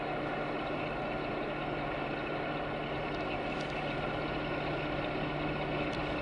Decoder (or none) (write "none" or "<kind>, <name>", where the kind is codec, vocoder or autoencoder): none